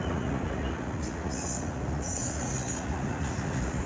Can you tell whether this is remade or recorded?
remade